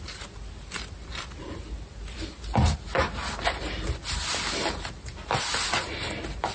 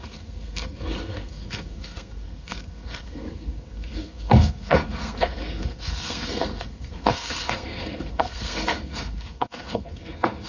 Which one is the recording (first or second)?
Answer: first